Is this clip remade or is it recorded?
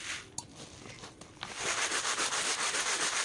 recorded